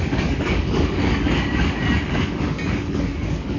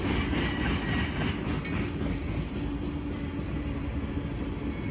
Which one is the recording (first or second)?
second